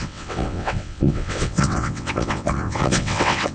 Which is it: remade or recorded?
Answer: remade